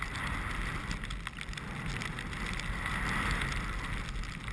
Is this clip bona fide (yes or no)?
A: yes